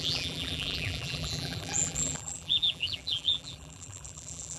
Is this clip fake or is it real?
fake